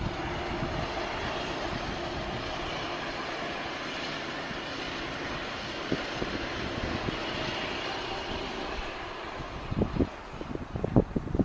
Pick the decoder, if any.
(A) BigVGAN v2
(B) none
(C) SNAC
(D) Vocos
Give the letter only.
B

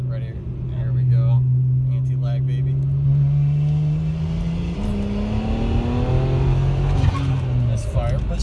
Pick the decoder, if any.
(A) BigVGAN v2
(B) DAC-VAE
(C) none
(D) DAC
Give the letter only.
C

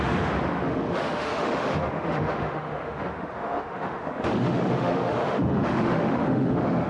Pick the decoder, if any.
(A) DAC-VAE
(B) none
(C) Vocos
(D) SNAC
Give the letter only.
A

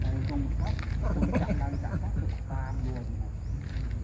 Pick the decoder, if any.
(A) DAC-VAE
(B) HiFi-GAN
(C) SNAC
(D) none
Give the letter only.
D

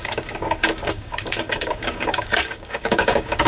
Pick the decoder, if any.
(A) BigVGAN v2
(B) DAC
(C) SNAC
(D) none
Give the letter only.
B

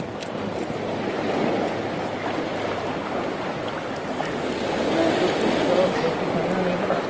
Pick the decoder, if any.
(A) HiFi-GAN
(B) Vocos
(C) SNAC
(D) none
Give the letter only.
D